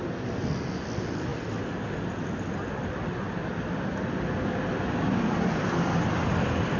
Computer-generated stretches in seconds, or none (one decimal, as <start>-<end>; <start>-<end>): none

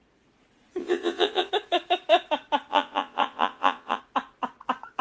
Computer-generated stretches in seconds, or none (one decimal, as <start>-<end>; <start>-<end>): 0.8-1.5; 2.7-4.0

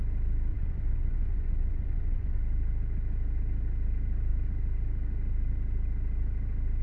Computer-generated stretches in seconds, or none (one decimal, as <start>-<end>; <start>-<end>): 0.5-2.4

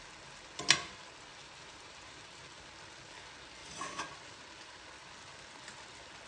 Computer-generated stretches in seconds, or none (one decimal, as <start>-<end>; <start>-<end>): 1.3-2.4

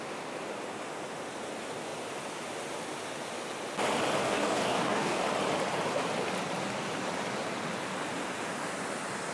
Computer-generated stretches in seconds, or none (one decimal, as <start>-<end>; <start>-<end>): 4.2-5.2

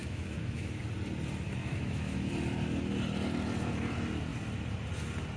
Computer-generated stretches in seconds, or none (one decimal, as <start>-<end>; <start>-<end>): 0.0-0.8; 1.6-2.3

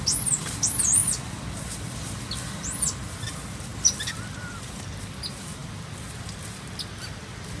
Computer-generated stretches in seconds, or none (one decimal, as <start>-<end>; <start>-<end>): none

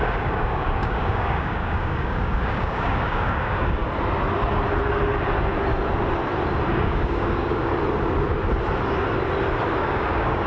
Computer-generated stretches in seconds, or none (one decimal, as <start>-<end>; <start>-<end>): 0.0-3.8; 6.7-7.7; 9.8-10.5